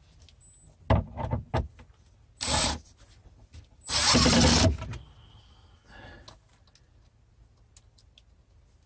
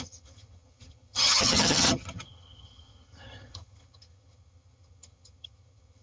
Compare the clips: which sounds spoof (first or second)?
second